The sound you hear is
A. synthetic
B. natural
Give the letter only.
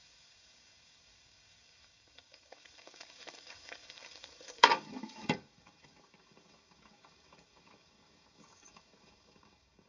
A